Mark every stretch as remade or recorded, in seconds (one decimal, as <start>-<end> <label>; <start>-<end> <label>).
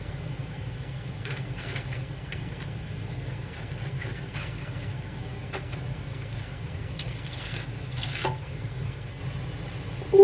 0.0-9.2 remade; 9.2-10.2 recorded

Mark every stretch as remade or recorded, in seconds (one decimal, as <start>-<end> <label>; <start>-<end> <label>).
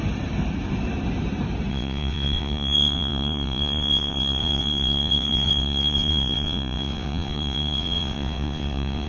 0.0-1.7 recorded; 1.7-9.1 remade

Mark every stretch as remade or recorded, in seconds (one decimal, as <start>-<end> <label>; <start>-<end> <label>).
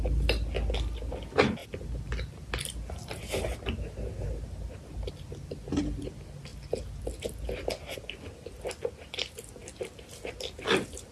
0.0-11.1 recorded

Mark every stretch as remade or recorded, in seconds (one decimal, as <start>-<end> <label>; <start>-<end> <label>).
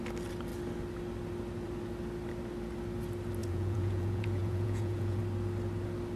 0.0-3.4 recorded; 3.4-5.2 remade; 5.2-6.2 recorded